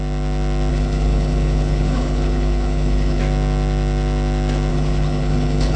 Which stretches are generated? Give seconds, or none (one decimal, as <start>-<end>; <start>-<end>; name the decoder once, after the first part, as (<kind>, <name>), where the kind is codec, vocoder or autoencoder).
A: 0.7-3.2 (codec, HILCodec); 4.7-5.8